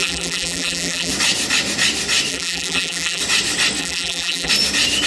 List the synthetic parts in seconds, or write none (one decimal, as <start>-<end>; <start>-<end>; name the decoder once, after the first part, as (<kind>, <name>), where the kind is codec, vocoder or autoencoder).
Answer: 0.0-1.1 (vocoder, BigVGAN v2); 2.3-3.2; 3.8-4.5